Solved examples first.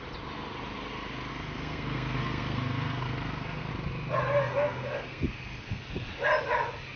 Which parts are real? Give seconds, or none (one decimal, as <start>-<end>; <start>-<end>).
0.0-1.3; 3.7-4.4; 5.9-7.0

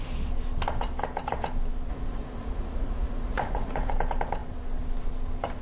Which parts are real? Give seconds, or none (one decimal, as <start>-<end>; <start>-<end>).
0.0-1.9; 3.9-5.6

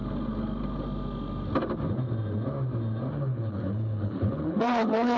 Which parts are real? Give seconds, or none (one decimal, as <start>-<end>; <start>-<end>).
0.0-3.1

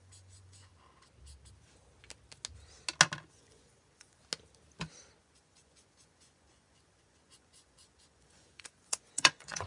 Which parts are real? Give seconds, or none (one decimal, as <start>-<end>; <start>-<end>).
0.7-3.3; 4.2-5.2